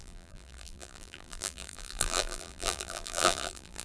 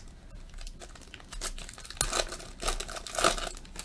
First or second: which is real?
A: second